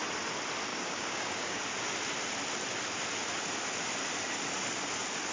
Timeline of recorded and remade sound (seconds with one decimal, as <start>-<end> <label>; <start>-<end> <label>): 0.0-0.7 recorded; 0.7-1.6 remade; 1.6-5.3 recorded